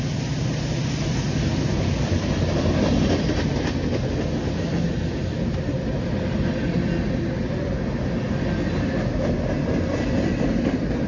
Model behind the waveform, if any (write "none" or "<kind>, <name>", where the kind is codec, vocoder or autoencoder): none